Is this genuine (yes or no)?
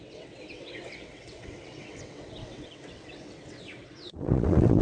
no